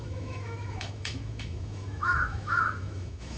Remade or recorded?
remade